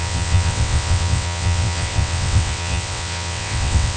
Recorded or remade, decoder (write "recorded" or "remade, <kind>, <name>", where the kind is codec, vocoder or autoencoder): remade, vocoder, WaveNeXt